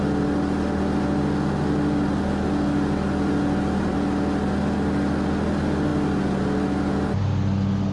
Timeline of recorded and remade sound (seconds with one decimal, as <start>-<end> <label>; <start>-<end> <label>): 0.0-7.9 recorded